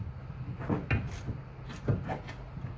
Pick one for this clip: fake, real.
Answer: real